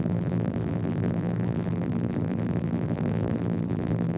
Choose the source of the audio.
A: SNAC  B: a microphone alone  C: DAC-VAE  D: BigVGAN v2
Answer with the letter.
D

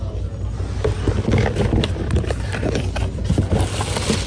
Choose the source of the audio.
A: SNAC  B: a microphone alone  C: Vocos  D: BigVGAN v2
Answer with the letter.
D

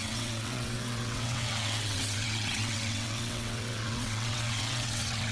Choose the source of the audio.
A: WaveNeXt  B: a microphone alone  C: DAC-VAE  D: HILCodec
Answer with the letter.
A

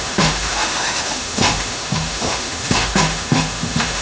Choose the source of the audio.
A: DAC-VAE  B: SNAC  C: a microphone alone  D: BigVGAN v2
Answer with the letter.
A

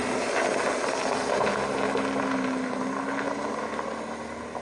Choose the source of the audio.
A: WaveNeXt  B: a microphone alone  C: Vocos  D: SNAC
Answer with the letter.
B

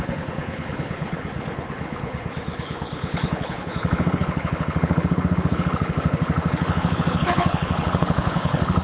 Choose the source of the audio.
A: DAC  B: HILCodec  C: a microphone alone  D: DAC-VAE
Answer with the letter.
B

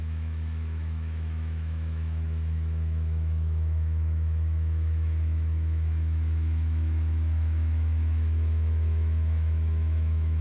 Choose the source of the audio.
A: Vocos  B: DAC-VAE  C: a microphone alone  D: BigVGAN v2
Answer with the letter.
B